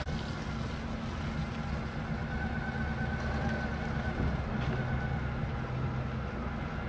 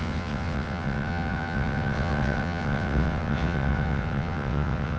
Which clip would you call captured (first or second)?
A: first